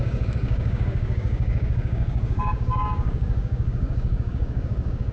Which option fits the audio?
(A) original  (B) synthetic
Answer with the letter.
B